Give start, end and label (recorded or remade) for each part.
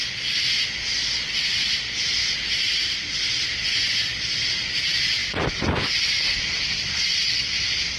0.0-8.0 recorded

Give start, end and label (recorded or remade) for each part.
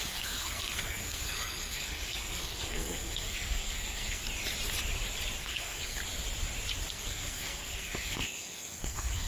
0.0-4.2 remade; 4.2-5.4 recorded; 5.4-6.0 remade; 6.0-6.9 recorded; 6.9-9.3 remade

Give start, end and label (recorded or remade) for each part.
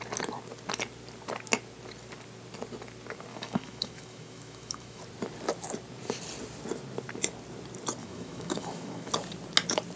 0.0-3.3 recorded; 3.3-5.0 remade; 5.0-8.0 recorded; 8.0-9.1 remade; 9.1-10.0 recorded